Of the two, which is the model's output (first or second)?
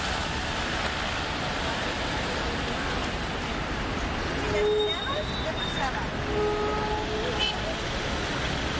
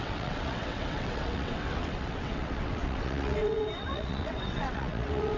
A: second